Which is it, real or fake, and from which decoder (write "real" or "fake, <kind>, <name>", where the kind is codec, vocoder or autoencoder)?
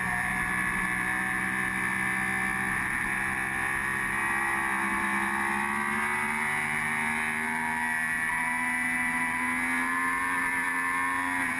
real